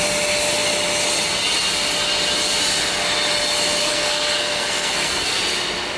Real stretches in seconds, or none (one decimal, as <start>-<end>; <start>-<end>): 0.0-3.8; 5.4-6.0